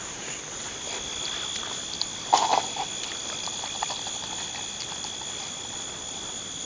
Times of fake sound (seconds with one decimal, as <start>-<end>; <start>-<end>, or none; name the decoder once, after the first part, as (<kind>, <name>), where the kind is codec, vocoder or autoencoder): none